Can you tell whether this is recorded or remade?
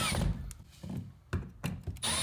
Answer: recorded